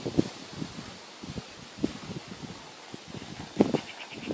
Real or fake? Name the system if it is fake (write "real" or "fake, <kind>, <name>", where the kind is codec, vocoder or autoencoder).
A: real